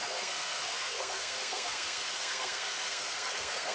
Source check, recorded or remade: remade